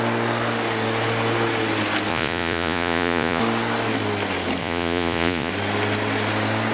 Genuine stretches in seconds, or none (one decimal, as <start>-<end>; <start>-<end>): 0.0-2.1; 3.4-4.6; 5.5-6.7